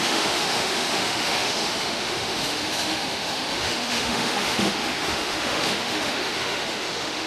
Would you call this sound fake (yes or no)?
yes